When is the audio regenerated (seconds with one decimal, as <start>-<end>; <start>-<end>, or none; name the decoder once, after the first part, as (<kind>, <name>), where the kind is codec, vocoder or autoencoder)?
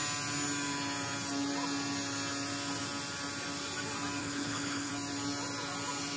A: 4.2-4.9 (codec, HILCodec)